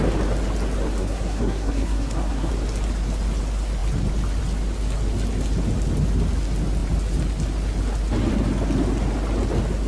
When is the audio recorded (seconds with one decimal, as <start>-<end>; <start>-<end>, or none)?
0.0-1.0; 2.5-9.9